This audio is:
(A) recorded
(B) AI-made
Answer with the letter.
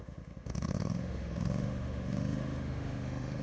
B